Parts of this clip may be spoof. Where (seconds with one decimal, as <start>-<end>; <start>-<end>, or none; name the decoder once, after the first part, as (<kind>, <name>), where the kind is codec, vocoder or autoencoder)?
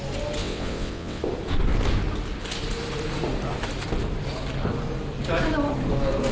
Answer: 0.4-1.2 (vocoder, WaveNeXt)